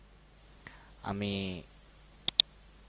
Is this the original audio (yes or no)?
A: yes